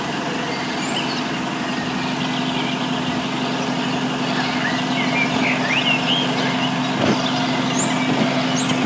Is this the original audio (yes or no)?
yes